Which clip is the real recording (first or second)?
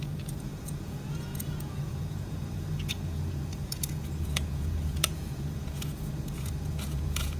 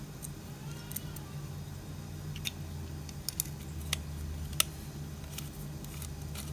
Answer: second